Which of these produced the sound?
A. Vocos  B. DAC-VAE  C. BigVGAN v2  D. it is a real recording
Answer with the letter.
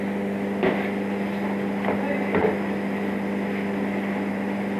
D